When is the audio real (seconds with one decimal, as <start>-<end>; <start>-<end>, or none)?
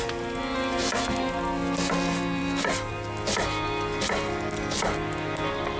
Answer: 0.0-5.8